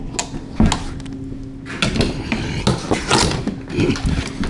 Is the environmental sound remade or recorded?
recorded